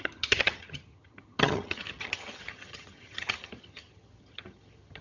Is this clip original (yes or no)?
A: no